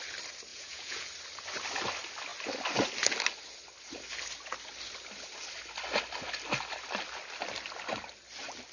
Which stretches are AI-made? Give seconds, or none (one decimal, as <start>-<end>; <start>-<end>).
0.5-1.1